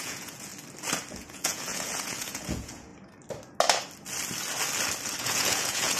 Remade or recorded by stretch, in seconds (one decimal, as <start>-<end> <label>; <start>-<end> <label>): 0.0-0.5 remade; 0.5-1.1 recorded; 1.1-2.9 remade; 2.9-5.2 recorded; 5.2-6.0 remade